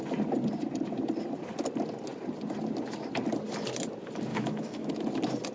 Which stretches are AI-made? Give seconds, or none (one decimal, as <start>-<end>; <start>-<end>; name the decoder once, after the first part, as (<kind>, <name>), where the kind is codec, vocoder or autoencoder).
4.3-4.9 (autoencoder, DAC-VAE)